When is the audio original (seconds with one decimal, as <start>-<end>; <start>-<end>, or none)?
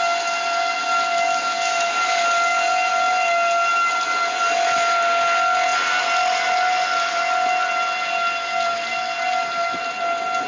0.0-10.5